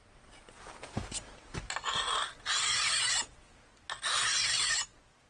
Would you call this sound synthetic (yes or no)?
no